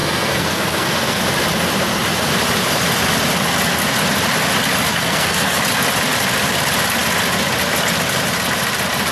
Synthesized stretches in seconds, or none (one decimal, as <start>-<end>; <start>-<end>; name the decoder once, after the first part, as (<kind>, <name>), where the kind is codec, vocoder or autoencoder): 0.0-1.2 (codec, SNAC); 4.9-5.6